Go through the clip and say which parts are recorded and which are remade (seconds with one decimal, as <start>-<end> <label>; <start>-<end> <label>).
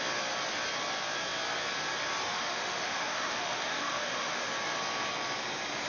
0.0-2.3 recorded; 2.3-4.5 remade; 4.5-5.9 recorded